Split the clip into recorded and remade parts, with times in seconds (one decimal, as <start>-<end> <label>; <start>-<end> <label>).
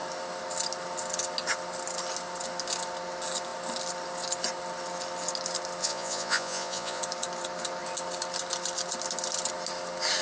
0.0-5.8 recorded; 5.8-7.0 remade; 7.0-10.2 recorded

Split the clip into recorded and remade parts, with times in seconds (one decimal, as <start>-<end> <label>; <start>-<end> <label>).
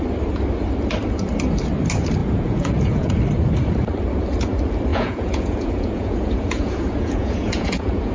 0.0-2.2 recorded; 2.2-3.1 remade; 3.1-4.9 recorded; 4.9-8.1 remade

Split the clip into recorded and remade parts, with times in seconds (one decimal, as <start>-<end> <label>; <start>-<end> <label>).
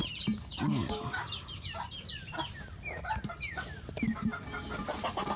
0.0-0.8 recorded; 0.8-4.0 remade; 4.0-4.8 recorded; 4.8-5.4 remade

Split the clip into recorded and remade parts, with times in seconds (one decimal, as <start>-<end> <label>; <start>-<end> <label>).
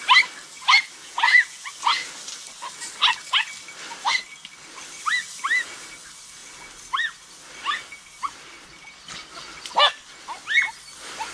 0.0-1.0 recorded; 1.0-1.7 remade; 1.7-11.3 recorded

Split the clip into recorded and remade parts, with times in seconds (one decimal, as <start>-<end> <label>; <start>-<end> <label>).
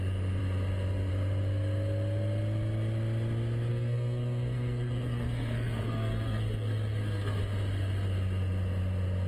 0.0-3.7 recorded; 3.7-7.4 remade; 7.4-9.3 recorded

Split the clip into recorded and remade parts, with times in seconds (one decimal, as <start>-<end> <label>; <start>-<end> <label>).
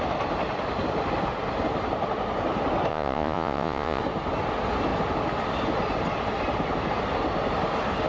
0.0-2.9 recorded; 2.9-4.0 remade; 4.0-8.1 recorded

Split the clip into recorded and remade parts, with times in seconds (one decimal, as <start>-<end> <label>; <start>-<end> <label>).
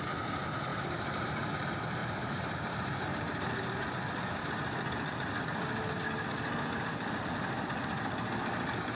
0.0-0.7 recorded; 0.7-1.5 remade; 1.5-2.0 recorded; 2.0-3.8 remade; 3.8-9.0 recorded